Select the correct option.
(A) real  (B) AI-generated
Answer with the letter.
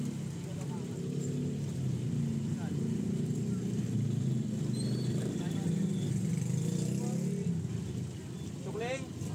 A